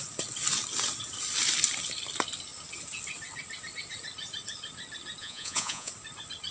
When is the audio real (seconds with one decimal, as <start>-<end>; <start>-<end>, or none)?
0.0-5.2; 5.9-6.5